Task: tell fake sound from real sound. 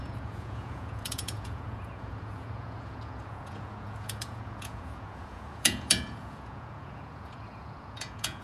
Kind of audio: fake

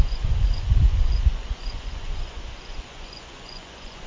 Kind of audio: fake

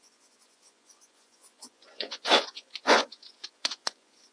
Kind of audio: fake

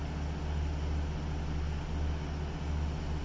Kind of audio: real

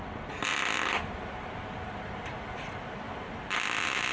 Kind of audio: real